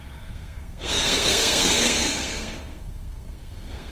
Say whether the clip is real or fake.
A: fake